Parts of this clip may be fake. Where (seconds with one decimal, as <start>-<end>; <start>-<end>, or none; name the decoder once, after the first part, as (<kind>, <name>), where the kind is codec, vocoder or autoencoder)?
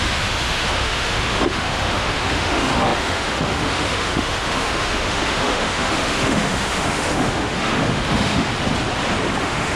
0.0-8.5 (autoencoder, DAC-VAE); 9.4-9.8